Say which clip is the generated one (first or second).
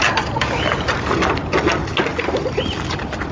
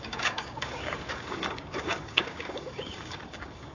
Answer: second